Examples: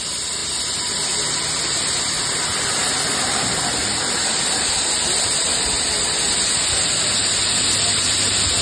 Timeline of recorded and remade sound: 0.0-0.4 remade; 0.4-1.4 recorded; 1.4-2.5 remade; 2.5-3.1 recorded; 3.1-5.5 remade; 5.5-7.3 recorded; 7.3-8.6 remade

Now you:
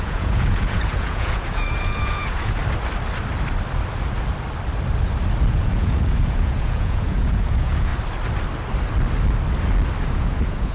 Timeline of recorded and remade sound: 0.0-2.6 remade; 2.6-5.5 recorded; 5.5-7.9 remade; 7.9-10.1 recorded; 10.1-10.7 remade

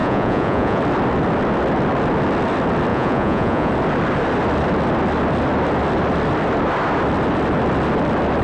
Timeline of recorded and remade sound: 0.0-0.8 remade; 0.8-2.9 recorded; 2.9-3.7 remade; 3.7-8.4 recorded

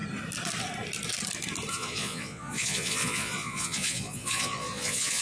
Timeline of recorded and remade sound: 0.0-1.7 recorded; 1.7-5.2 remade